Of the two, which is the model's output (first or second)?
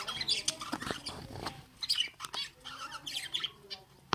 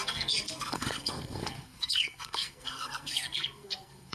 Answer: second